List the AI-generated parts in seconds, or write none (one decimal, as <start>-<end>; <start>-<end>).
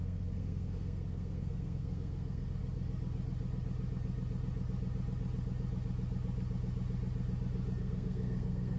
0.0-2.6; 7.8-8.8